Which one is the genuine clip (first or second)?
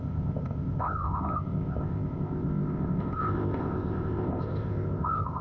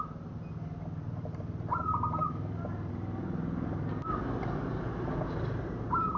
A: second